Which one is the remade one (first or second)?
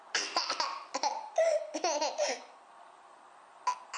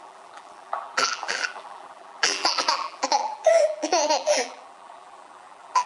second